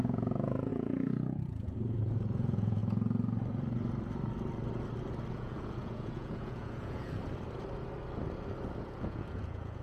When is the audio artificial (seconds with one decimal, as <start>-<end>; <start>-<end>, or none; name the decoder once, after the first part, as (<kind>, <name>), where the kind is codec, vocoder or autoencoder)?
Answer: 0.0-2.8 (vocoder, Vocos); 5.3-7.2; 8.8-9.8

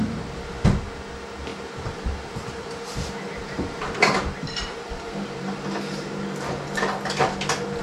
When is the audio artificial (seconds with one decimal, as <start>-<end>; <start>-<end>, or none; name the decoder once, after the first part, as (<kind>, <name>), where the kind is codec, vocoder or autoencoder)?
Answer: 1.5-6.2 (vocoder, BigVGAN v2)